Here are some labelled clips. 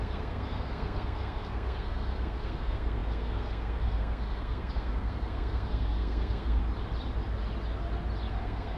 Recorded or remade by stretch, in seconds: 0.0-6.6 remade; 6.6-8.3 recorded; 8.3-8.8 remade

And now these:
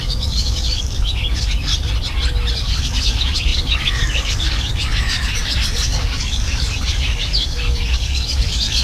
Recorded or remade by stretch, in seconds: 0.0-1.7 remade; 1.7-2.5 recorded; 2.5-8.8 remade

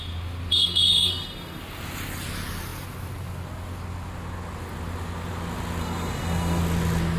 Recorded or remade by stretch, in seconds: 0.0-0.5 recorded; 0.5-1.6 remade; 1.6-5.8 recorded; 5.8-6.6 remade; 6.6-7.2 recorded

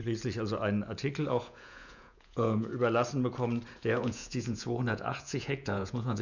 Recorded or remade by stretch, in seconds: 0.0-1.3 recorded; 1.3-2.7 remade; 2.7-3.8 recorded; 3.8-6.2 remade

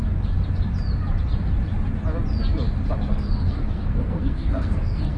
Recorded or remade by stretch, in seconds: 0.0-3.1 recorded; 3.1-5.2 remade